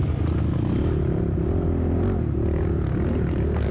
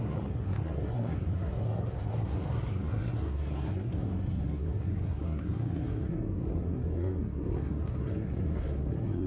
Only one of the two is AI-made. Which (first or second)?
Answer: second